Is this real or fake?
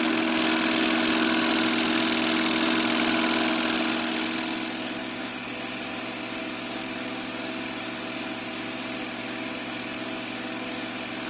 real